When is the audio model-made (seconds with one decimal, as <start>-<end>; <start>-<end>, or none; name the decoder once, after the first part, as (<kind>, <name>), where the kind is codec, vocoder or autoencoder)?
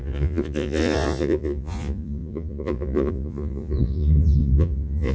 0.0-5.1 (vocoder, Vocos)